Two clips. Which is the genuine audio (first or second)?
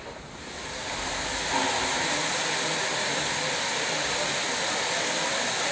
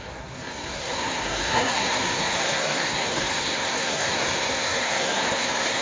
first